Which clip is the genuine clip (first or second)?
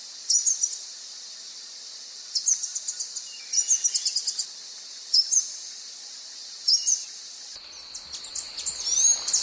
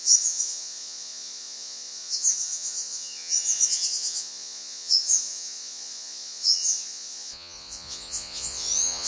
first